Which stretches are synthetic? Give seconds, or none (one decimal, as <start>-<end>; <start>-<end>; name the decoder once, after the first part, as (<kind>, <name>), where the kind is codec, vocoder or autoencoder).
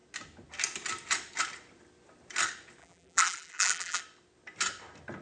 2.8-4.0 (vocoder, BigVGAN v2)